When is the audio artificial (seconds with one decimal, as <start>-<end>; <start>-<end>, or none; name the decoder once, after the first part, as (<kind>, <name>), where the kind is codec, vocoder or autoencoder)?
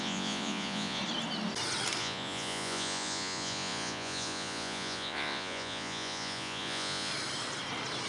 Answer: 0.0-1.0 (vocoder, Vocos); 2.0-7.1